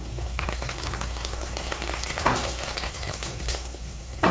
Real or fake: fake